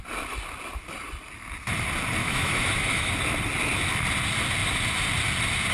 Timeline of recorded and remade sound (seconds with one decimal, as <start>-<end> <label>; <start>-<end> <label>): 0.0-2.2 recorded; 2.2-3.1 remade; 3.1-5.7 recorded